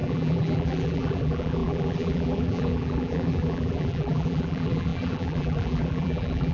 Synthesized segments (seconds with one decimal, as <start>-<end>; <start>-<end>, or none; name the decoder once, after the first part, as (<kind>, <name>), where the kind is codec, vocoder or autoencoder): 0.0-6.5 (vocoder, BigVGAN v2)